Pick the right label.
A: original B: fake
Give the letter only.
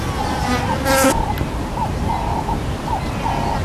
A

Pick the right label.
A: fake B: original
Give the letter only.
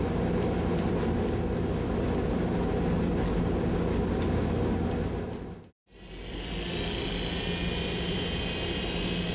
B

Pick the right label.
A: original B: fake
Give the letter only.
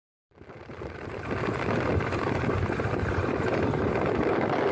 B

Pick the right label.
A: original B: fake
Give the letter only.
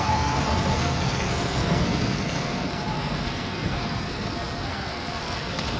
B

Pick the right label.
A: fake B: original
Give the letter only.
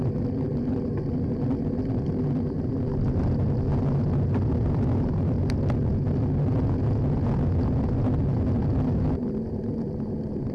B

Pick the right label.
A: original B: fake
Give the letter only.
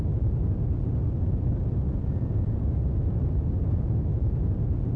A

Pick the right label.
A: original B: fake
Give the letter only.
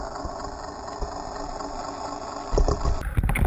A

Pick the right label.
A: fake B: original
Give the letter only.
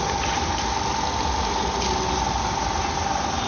B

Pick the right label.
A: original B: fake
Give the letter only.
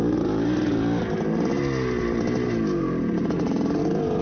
A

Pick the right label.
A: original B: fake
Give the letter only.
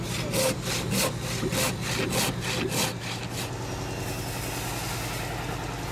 A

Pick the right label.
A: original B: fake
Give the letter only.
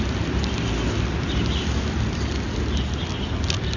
A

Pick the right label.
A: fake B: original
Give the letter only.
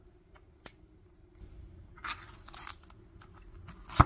B